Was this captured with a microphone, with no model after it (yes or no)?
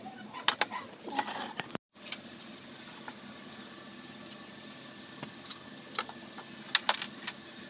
yes